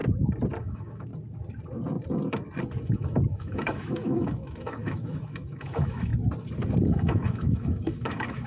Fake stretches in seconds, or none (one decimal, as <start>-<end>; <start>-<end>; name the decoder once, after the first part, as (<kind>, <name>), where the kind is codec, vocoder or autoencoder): 0.6-1.1 (autoencoder, DAC-VAE); 2.8-6.1; 6.8-8.5